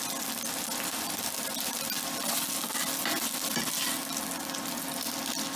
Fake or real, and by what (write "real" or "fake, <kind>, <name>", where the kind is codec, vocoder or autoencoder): real